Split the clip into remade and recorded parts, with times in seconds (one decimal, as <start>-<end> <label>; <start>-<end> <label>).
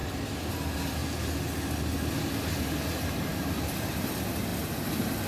0.0-0.5 recorded; 0.5-1.0 remade; 1.0-2.4 recorded; 2.4-5.3 remade